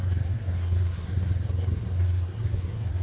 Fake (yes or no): yes